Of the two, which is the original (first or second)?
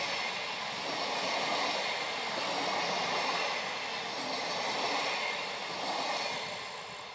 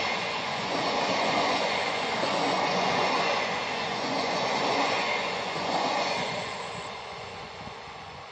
first